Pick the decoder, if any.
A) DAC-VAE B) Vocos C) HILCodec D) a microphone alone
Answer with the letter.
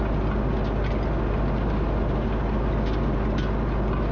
D